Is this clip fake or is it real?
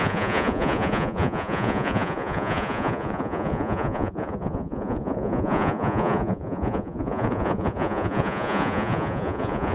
fake